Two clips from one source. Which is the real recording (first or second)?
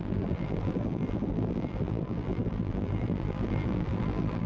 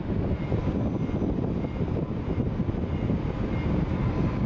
second